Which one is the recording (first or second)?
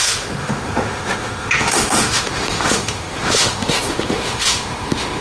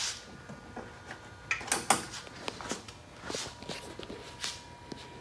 second